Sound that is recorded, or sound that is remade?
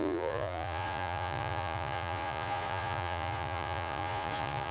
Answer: remade